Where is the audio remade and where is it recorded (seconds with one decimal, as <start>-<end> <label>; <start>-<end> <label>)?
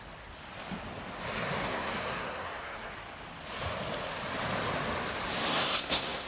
0.0-1.6 recorded; 1.6-2.9 remade; 2.9-5.5 recorded; 5.5-6.3 remade